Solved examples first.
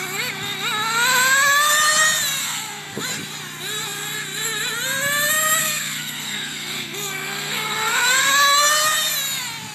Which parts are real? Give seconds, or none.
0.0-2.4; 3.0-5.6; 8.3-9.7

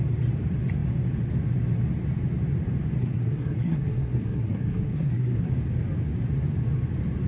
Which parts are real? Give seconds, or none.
0.0-3.0; 5.4-7.3